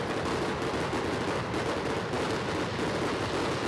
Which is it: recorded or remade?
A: recorded